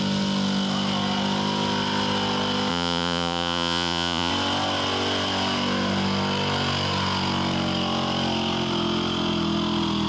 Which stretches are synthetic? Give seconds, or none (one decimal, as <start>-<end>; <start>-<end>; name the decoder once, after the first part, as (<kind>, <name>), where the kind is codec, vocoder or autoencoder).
2.7-4.3 (vocoder, Vocos)